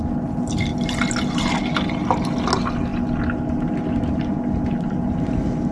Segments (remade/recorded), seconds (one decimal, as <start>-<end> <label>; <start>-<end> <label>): 0.0-5.7 recorded